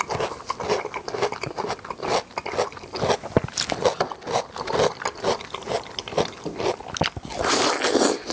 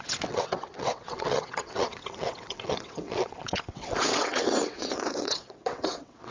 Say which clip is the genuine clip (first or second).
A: first